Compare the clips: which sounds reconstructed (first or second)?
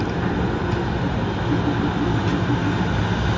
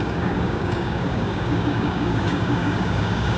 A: second